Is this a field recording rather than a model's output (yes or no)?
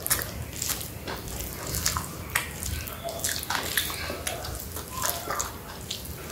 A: yes